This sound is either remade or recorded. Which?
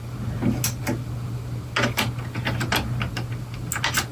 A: recorded